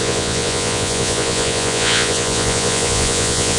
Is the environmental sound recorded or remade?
remade